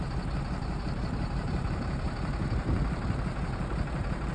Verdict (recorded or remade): remade